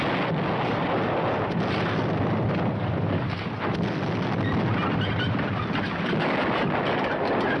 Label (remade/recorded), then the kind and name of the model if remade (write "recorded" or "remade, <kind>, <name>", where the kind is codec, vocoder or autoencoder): recorded